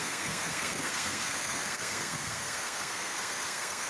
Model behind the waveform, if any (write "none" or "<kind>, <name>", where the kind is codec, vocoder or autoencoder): codec, SNAC